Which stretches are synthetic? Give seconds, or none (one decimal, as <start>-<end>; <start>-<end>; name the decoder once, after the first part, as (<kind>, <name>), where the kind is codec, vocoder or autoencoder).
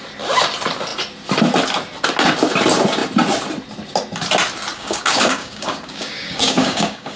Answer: 4.7-7.2 (codec, DAC)